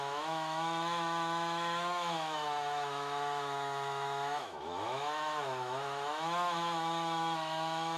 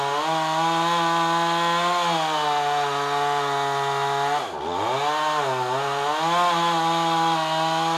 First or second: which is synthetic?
first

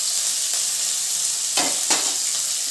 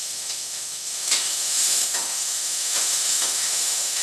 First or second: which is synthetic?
second